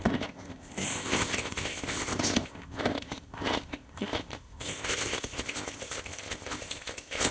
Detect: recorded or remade remade